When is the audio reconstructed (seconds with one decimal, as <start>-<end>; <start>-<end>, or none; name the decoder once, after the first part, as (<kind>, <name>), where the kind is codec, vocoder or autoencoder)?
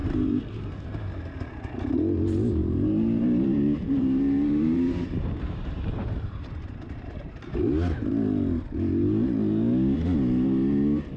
0.0-1.2 (vocoder, BigVGAN v2); 2.6-7.6